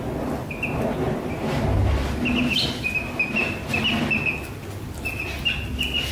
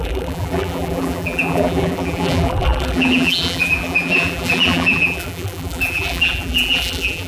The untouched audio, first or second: first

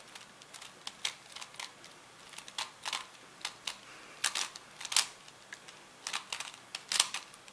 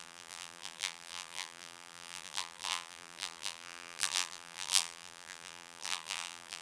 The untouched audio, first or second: first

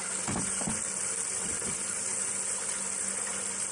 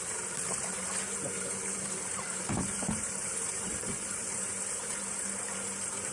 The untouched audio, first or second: first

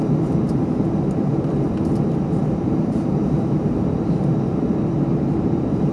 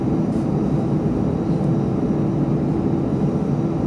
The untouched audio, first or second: second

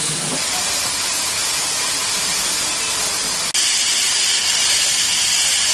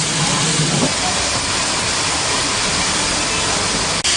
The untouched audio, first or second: first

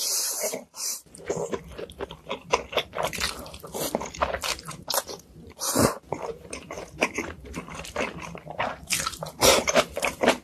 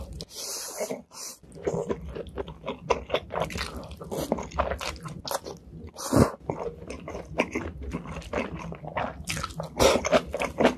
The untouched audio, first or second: second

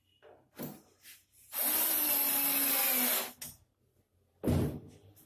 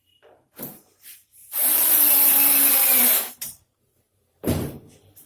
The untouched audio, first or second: first